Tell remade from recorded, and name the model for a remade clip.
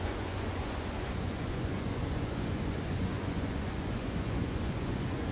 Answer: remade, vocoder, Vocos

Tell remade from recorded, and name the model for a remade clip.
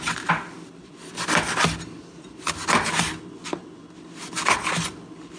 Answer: recorded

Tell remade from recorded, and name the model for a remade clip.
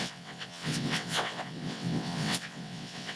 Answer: remade, vocoder, WaveNeXt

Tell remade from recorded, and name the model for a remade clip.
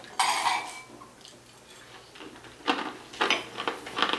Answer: recorded